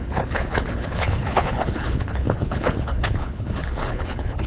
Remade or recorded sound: remade